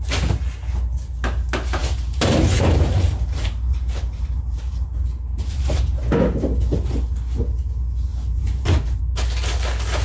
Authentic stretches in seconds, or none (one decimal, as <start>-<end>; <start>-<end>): 0.0-1.8; 6.0-8.1; 9.0-10.0